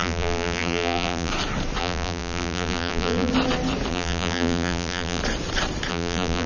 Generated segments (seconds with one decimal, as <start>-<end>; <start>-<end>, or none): 0.0-1.3; 1.8-3.3; 3.9-5.2; 5.9-6.5

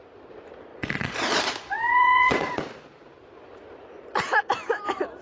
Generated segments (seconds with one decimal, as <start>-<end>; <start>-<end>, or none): 0.7-2.6

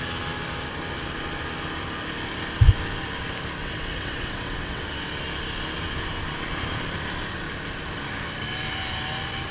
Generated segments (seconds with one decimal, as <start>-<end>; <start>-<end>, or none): 3.6-4.8

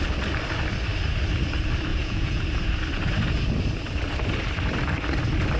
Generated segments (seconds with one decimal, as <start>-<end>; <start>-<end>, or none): 1.9-2.4

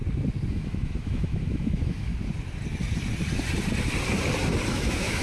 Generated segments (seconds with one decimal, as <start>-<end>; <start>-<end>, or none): 0.5-2.1; 4.7-5.2